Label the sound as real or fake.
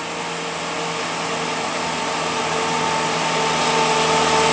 real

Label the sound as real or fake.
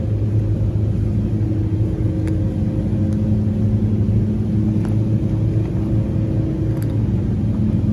real